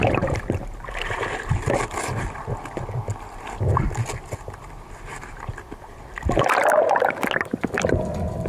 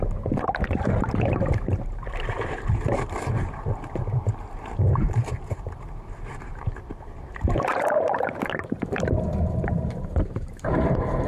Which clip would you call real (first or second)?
first